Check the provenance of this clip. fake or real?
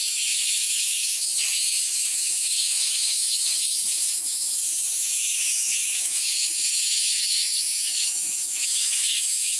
fake